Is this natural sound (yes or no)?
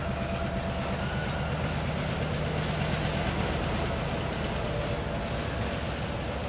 yes